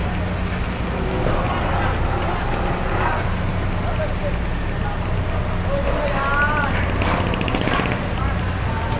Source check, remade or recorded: recorded